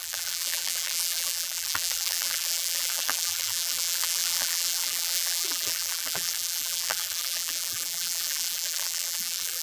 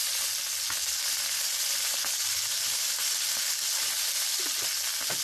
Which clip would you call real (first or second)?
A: second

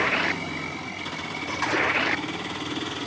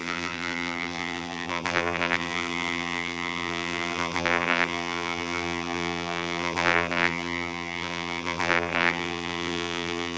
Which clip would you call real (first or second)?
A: first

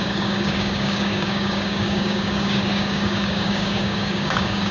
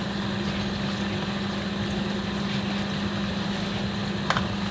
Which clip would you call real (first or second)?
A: second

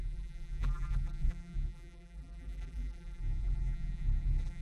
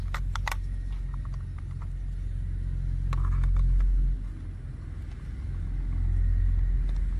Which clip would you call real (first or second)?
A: second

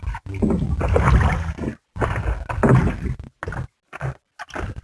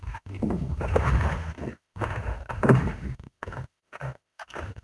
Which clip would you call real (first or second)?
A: first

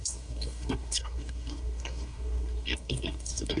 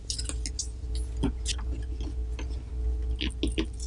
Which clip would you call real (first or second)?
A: second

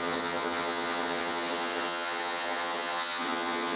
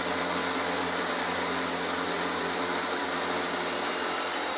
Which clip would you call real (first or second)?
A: second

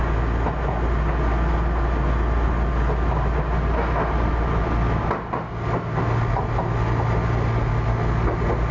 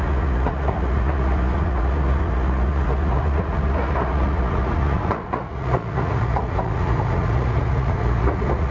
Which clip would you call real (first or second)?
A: first